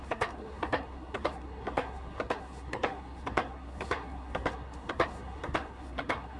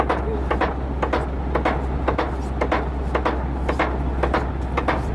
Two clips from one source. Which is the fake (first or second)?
first